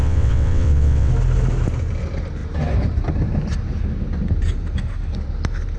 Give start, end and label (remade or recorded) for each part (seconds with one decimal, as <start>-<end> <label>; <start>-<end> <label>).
0.0-1.1 remade; 1.1-5.8 recorded